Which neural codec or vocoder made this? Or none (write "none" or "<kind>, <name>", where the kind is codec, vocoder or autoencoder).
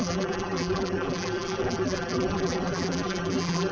vocoder, BigVGAN v2